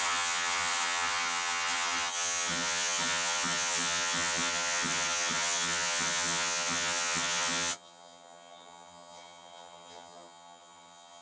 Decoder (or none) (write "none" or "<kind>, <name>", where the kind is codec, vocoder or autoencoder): vocoder, HiFi-GAN